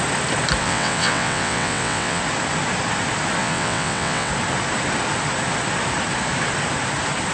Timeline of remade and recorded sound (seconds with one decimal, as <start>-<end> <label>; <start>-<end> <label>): 0.0-0.6 recorded; 0.6-2.2 remade; 2.2-3.4 recorded; 3.4-4.3 remade; 4.3-7.3 recorded